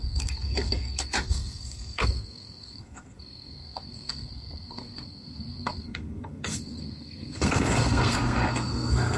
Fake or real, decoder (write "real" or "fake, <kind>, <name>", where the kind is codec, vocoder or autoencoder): fake, codec, SNAC